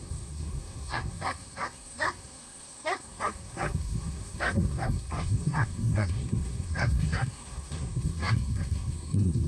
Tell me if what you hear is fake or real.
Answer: fake